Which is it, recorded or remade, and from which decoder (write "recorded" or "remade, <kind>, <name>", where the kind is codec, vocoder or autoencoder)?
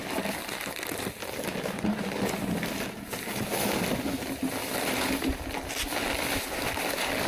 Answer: recorded